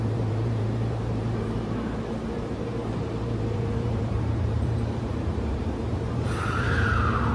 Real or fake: fake